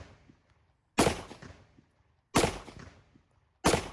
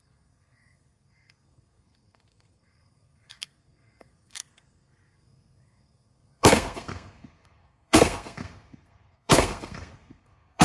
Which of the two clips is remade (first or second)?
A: second